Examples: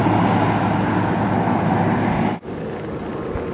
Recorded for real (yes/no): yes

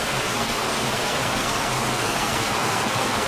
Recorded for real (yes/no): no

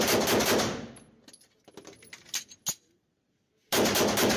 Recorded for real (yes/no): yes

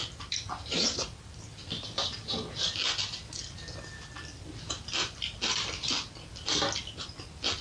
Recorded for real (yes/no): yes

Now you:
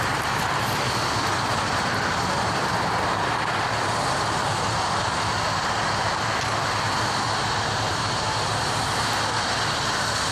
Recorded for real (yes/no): yes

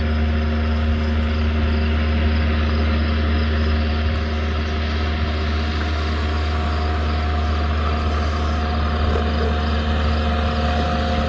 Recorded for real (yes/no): yes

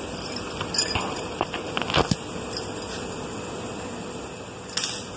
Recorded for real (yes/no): yes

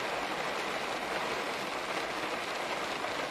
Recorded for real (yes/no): yes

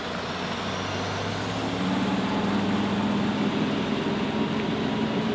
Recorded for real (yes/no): yes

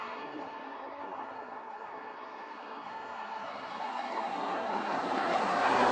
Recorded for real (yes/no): no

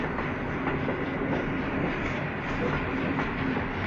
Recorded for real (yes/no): yes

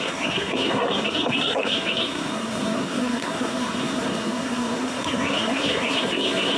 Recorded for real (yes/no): no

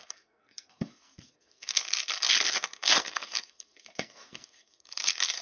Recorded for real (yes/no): no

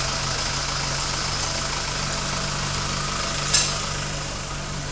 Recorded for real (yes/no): yes